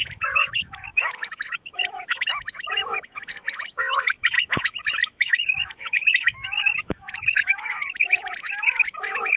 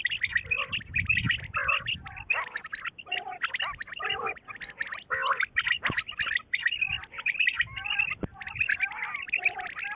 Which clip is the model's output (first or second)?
first